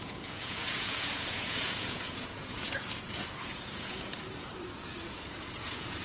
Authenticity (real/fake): fake